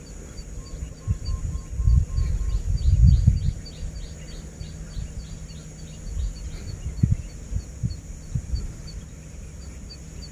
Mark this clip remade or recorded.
recorded